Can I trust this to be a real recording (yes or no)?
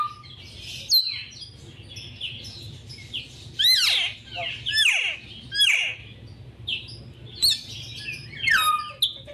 yes